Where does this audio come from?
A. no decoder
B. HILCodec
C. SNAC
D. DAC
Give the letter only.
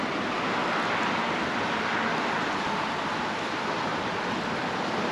A